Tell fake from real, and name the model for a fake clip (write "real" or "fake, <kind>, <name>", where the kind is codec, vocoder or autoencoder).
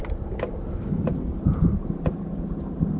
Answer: real